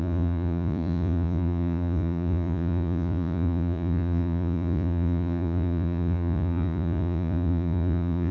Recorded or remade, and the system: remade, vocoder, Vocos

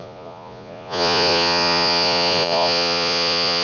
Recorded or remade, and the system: remade, vocoder, Vocos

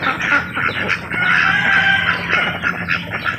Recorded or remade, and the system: recorded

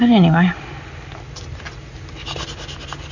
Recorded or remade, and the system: recorded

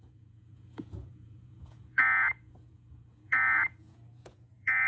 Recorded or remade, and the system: remade, vocoder, Vocos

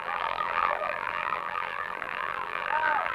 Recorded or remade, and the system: remade, vocoder, BigVGAN v2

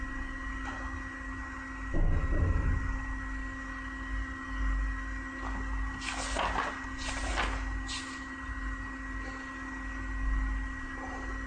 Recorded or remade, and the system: recorded